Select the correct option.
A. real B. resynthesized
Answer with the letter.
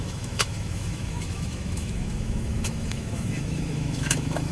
B